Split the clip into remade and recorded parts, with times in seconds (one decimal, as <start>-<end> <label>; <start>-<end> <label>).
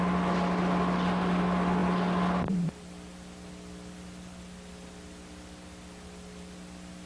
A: 0.0-7.1 recorded